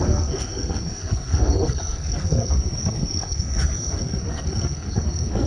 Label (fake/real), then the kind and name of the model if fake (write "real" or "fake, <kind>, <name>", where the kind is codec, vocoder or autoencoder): fake, codec, SNAC